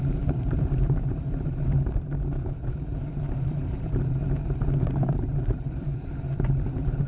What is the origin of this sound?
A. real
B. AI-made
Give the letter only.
B